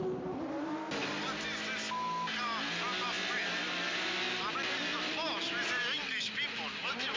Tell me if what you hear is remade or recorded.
recorded